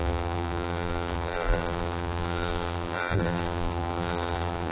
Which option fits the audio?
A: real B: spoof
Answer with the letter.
B